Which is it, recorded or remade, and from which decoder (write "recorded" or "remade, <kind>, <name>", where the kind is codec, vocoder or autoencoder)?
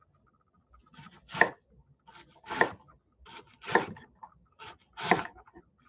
recorded